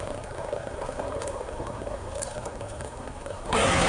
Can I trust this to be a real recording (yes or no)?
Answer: no